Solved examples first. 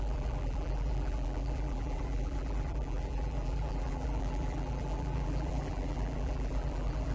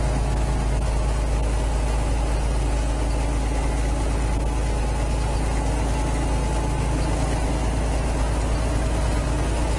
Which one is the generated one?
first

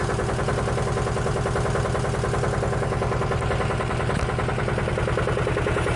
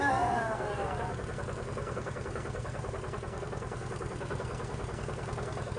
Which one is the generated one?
second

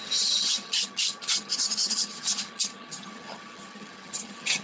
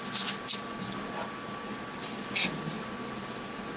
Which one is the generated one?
first